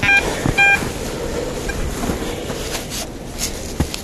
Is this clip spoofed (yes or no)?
no